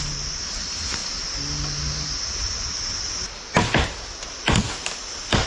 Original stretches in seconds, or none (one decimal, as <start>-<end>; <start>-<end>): 0.0-5.5